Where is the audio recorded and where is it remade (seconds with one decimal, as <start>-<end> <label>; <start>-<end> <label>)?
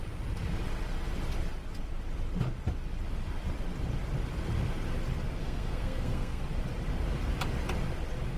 0.0-5.4 recorded; 5.4-6.4 remade; 6.4-8.4 recorded